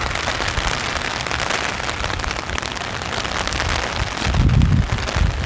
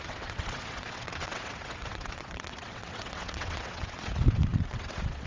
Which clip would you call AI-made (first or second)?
second